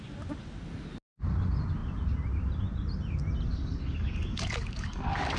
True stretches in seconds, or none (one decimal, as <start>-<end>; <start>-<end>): 0.0-3.5

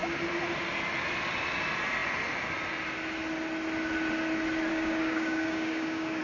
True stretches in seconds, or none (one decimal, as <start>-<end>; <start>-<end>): 0.0-4.7

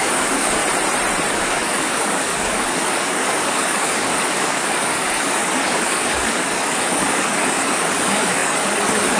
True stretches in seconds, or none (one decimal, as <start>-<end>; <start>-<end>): 0.6-1.3

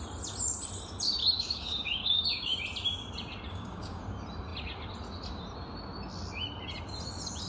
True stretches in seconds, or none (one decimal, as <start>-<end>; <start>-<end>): 0.0-1.2; 2.6-3.5; 4.0-7.5

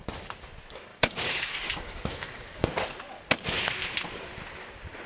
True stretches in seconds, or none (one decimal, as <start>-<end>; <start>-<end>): 0.0-0.9; 2.7-5.1

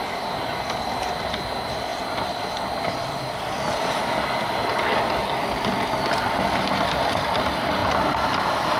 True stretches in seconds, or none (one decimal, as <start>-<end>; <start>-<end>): 0.0-8.8